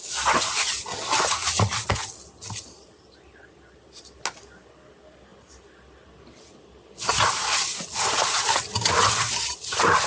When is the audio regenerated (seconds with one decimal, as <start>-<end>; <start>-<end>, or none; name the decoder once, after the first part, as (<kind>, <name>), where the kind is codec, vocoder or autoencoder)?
none